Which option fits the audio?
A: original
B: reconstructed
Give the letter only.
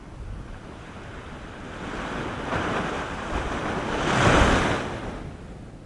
A